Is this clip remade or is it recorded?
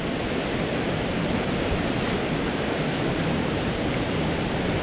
recorded